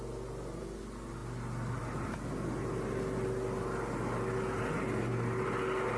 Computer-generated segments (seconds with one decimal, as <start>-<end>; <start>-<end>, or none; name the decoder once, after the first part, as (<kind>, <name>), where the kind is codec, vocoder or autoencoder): none